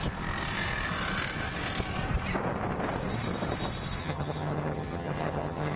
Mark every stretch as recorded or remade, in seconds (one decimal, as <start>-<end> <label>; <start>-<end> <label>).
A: 0.0-4.0 recorded; 4.0-5.8 remade